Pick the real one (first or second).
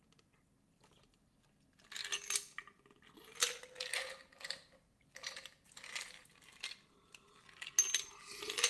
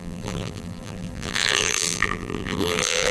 first